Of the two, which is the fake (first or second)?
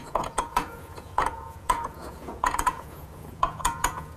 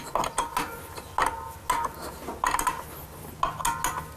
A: first